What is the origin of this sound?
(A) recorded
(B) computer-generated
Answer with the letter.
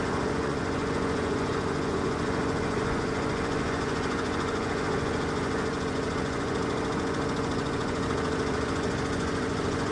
B